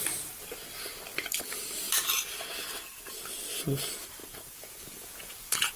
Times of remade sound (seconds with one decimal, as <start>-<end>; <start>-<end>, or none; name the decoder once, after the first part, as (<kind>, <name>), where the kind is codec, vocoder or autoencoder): 4.2-5.8 (vocoder, Vocos)